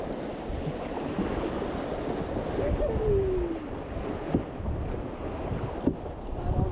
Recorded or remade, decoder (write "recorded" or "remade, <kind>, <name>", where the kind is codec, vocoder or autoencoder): recorded